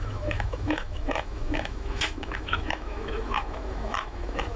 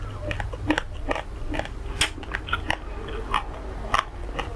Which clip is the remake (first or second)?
first